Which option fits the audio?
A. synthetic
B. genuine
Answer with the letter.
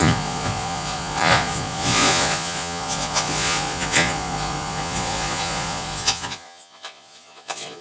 A